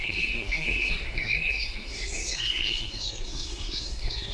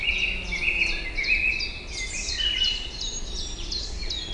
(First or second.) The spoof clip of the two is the first